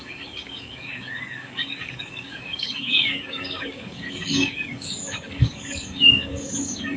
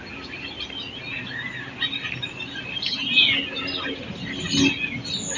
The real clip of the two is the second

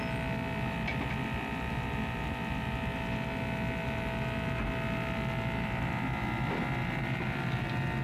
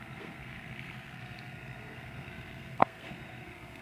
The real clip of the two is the first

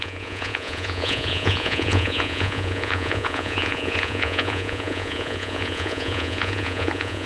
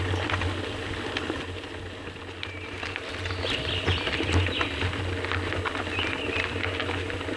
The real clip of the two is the second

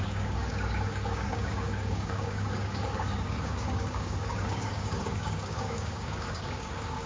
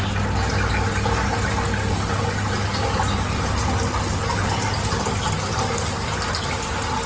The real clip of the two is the second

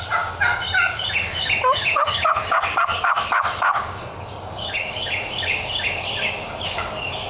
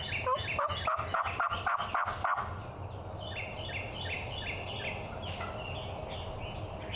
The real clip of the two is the second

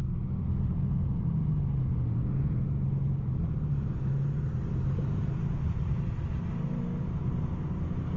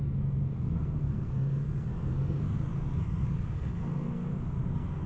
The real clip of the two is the first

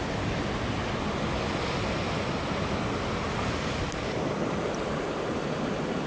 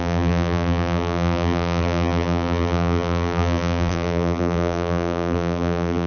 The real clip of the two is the first